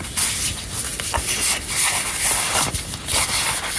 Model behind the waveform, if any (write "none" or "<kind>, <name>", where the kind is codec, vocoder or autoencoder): none